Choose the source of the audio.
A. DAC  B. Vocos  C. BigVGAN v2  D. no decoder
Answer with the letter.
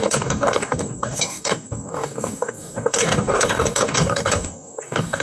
A